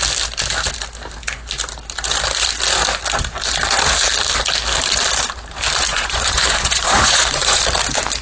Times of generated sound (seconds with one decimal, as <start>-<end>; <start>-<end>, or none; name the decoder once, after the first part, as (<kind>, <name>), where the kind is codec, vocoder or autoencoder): 5.9-7.6 (vocoder, Vocos)